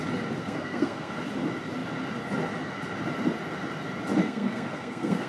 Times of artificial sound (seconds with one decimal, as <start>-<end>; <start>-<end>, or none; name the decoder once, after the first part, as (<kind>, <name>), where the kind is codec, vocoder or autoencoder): 0.4-1.1 (codec, SNAC); 4.2-5.3